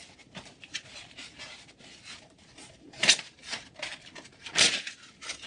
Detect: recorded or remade remade